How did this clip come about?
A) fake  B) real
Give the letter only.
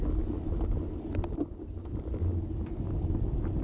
B